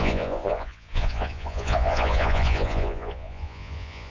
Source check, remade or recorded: remade